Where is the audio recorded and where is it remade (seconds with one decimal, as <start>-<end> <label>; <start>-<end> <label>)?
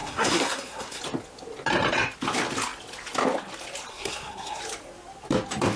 0.0-1.0 remade; 1.0-3.9 recorded; 3.9-4.6 remade; 4.6-5.8 recorded